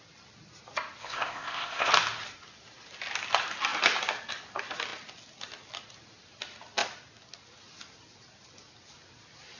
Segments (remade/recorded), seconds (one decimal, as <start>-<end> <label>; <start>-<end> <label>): 0.0-1.0 recorded; 1.0-1.9 remade; 1.9-9.6 recorded